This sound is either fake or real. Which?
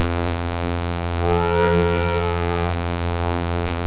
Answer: fake